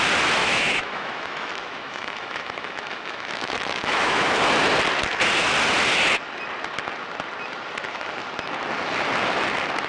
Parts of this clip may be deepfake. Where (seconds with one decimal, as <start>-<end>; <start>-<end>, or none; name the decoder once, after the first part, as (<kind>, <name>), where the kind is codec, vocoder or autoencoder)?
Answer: 0.4-4.4 (autoencoder, DAC-VAE)